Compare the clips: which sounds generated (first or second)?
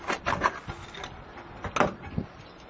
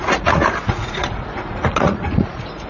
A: second